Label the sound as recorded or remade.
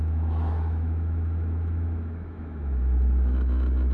remade